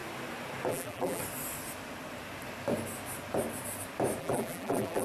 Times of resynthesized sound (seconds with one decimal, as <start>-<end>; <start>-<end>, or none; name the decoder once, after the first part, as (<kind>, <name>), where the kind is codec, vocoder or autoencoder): 0.7-1.2 (vocoder, BigVGAN v2); 4.2-5.0